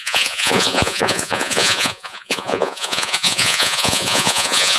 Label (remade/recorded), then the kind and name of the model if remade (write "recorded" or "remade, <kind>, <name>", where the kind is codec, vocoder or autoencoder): remade, vocoder, Vocos